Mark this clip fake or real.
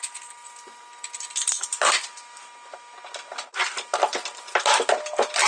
real